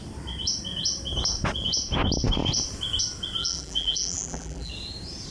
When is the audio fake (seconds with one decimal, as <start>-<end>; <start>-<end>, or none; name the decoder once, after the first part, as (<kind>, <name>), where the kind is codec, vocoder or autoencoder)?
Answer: 3.4-4.7 (vocoder, BigVGAN v2)